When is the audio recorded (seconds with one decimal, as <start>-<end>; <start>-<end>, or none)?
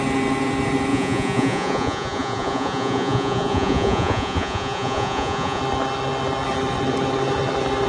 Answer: 0.0-0.9; 5.6-7.9